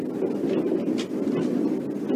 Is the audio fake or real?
real